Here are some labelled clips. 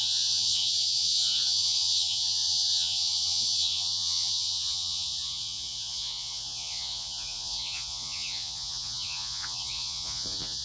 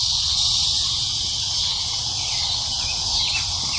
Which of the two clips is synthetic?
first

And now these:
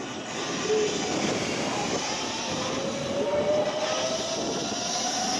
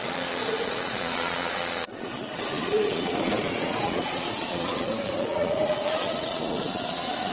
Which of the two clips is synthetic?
second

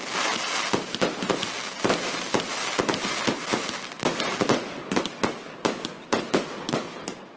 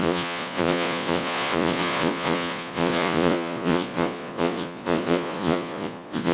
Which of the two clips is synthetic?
second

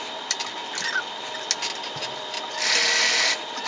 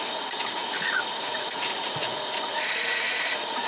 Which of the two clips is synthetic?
second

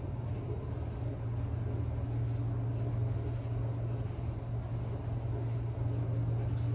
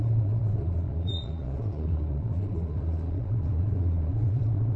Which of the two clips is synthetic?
second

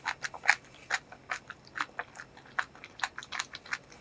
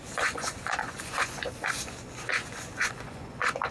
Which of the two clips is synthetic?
second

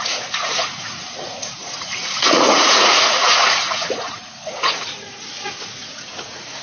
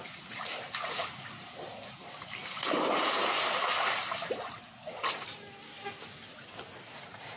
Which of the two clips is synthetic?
first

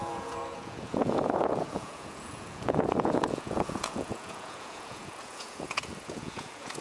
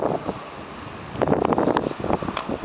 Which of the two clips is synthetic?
first